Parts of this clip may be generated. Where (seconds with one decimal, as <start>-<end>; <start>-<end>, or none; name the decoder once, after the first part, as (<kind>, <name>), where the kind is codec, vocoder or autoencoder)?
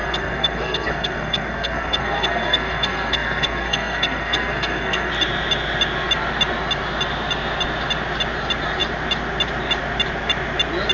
0.0-5.1 (codec, SNAC)